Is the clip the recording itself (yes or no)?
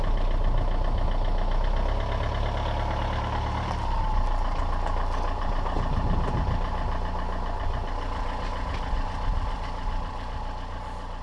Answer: yes